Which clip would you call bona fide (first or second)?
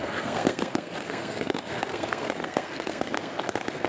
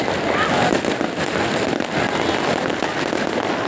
second